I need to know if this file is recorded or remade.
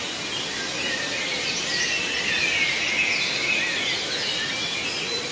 recorded